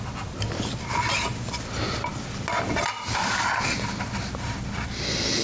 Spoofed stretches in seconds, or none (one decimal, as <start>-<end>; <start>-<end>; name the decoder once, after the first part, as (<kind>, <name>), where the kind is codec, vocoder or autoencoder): none